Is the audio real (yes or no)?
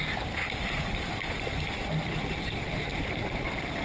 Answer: yes